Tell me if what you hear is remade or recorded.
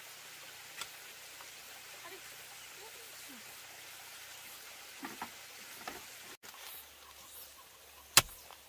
recorded